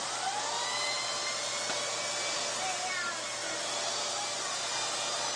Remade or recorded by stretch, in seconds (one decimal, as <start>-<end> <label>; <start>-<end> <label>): 0.0-5.4 recorded

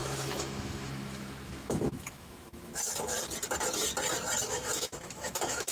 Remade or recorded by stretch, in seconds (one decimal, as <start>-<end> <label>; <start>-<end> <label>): 0.0-2.7 remade; 2.7-4.4 recorded; 4.4-5.7 remade

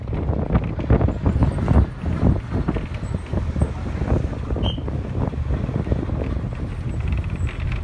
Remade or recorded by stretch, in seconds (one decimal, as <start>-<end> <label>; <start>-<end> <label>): 0.0-1.4 recorded; 1.4-6.0 remade; 6.0-7.8 recorded

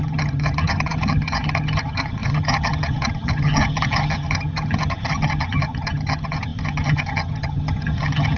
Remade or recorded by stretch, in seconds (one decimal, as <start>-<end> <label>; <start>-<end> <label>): 0.0-8.4 remade

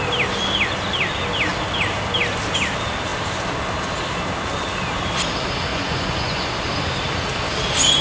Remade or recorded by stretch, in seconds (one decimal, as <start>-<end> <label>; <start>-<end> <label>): 0.0-5.7 recorded; 5.7-6.5 remade; 6.5-8.0 recorded